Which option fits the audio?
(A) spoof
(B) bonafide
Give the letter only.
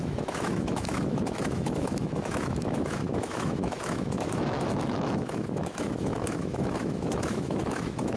A